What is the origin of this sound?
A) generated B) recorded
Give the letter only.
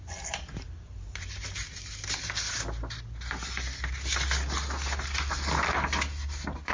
B